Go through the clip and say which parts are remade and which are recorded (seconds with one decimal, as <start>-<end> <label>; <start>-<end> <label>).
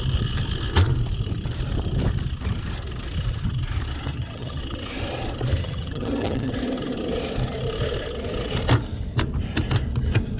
0.0-4.1 recorded; 4.1-4.6 remade; 4.6-5.6 recorded; 5.6-6.5 remade; 6.5-10.4 recorded